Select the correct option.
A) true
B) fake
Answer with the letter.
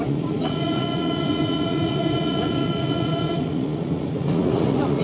B